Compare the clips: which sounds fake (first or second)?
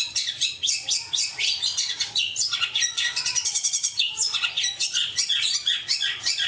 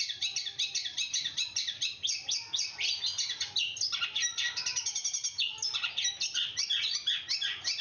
first